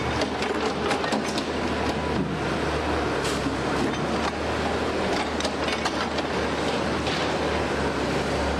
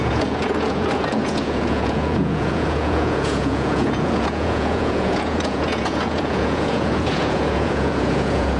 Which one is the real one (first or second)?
first